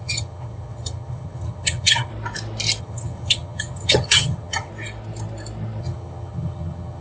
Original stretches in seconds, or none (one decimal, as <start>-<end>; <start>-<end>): 2.1-2.8; 4.7-5.8